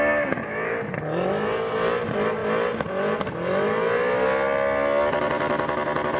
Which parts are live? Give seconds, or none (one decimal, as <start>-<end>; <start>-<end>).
0.0-6.2